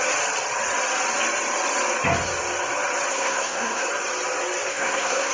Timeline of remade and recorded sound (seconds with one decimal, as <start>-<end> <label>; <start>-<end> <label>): 0.0-3.1 recorded; 3.1-3.9 remade; 3.9-4.7 recorded; 4.7-5.3 remade